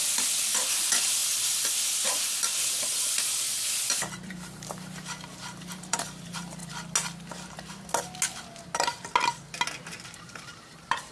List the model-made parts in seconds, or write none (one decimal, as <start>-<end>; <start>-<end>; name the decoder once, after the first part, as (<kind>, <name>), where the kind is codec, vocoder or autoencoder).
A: 0.0-6.6 (vocoder, BigVGAN v2); 10.2-11.1